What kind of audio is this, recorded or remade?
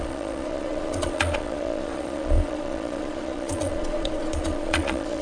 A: remade